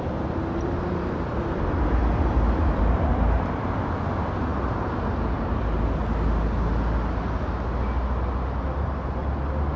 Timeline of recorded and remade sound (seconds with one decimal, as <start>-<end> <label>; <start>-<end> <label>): 0.0-9.8 recorded